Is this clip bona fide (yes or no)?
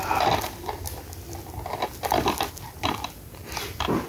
yes